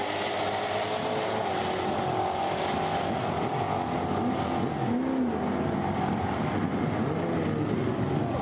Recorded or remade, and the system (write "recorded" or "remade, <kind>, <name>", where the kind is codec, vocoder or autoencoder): recorded